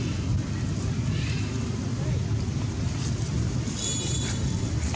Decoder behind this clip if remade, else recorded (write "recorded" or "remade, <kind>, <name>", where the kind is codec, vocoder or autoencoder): recorded